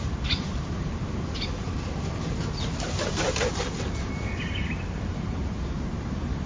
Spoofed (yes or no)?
yes